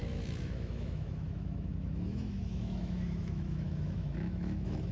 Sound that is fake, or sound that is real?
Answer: fake